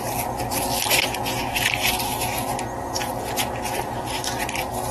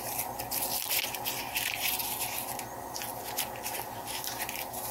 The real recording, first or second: first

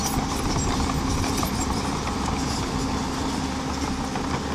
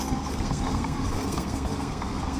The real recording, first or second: first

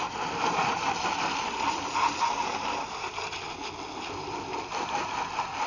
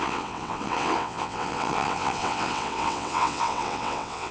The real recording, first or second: first